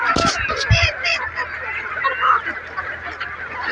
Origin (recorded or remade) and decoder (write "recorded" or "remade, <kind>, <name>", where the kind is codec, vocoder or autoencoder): recorded